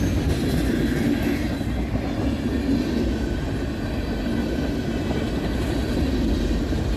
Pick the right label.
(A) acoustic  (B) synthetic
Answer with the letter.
A